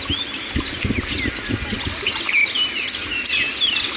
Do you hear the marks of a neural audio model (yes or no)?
no